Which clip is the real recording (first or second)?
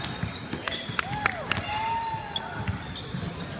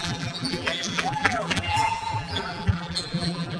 first